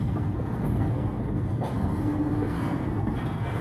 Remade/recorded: remade